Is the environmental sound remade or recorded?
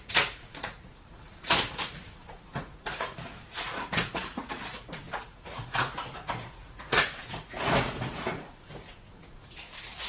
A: remade